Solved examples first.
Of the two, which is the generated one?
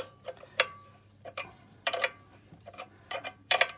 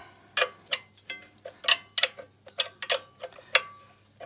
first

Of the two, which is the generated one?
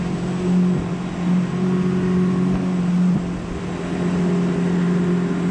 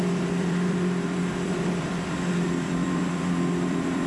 second